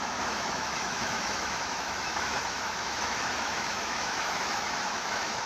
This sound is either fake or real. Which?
fake